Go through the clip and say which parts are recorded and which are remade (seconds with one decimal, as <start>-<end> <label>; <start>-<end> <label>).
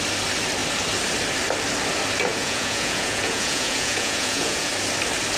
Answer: 0.0-2.3 recorded; 2.3-4.7 remade; 4.7-5.4 recorded